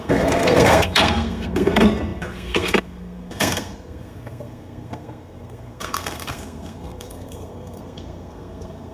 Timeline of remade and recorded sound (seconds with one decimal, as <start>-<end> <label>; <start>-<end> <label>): 0.0-8.9 remade